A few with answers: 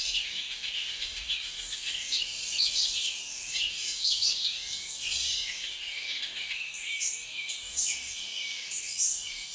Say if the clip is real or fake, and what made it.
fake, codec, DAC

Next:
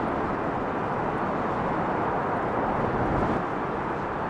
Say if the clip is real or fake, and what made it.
real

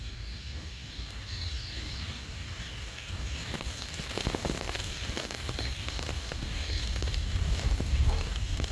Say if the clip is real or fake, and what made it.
fake, codec, DAC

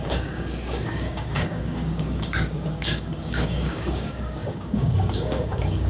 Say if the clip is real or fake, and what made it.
fake, codec, DAC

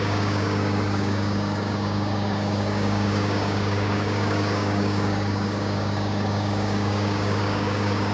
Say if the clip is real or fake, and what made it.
fake, codec, DAC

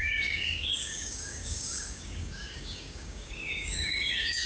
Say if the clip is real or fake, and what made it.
fake, codec, DAC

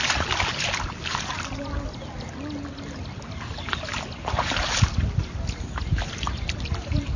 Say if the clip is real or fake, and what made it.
real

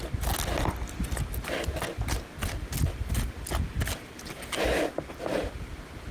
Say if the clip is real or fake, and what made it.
real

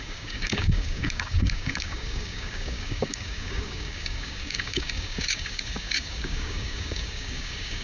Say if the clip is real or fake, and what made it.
fake, codec, DAC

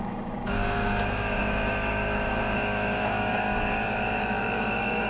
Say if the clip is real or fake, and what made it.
fake, codec, DAC